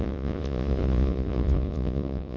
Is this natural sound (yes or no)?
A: no